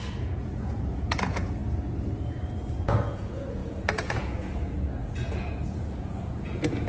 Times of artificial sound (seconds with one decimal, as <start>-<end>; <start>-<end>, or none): 0.0-1.6; 2.7-6.9